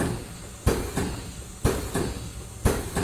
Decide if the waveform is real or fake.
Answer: fake